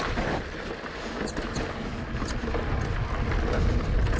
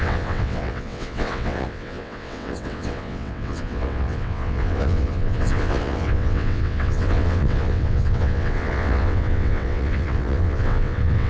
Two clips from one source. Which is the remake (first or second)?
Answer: second